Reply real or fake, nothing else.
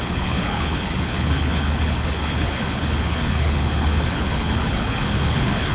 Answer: fake